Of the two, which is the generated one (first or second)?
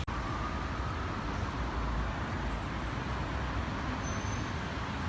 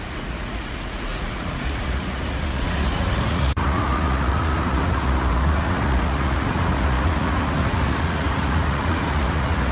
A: second